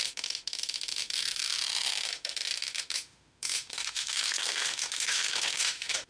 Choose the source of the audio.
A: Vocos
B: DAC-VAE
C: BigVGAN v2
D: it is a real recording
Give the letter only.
B